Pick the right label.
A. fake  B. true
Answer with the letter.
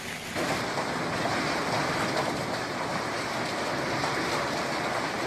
B